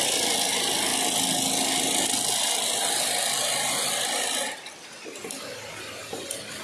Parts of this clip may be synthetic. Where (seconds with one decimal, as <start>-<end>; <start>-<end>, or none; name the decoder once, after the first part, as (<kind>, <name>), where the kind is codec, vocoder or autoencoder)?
none